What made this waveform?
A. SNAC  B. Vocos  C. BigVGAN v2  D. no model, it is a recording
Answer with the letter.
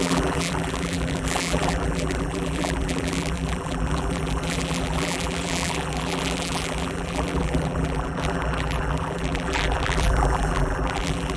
C